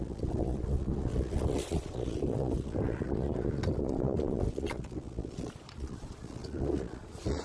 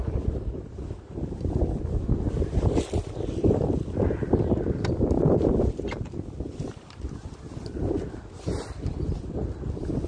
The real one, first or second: second